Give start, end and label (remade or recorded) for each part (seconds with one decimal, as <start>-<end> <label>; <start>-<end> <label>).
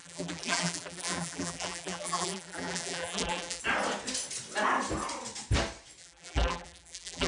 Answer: 0.0-3.6 remade; 3.6-6.0 recorded; 6.0-7.3 remade